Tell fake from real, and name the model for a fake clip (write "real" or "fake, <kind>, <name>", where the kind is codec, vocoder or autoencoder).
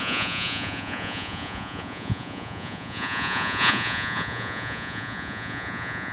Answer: fake, vocoder, Vocos